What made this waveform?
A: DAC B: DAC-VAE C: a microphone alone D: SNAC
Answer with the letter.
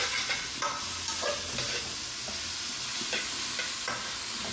C